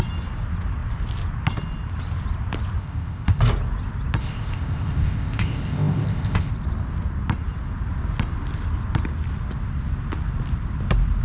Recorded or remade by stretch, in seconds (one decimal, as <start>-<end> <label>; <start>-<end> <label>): 0.0-2.8 recorded; 2.8-3.4 remade; 3.4-4.2 recorded; 4.2-6.5 remade; 6.5-11.2 recorded